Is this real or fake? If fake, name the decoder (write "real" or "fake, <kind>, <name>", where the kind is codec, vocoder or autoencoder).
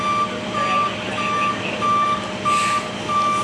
real